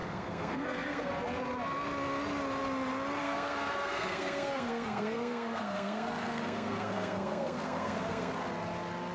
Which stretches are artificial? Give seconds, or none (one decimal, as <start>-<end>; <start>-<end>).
0.0-1.1; 3.2-8.3